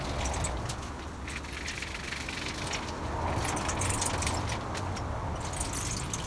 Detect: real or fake real